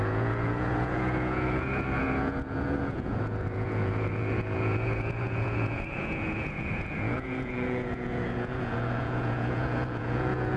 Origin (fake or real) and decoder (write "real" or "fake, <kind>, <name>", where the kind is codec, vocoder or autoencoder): fake, vocoder, Vocos